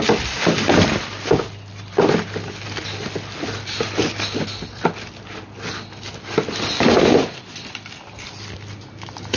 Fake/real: real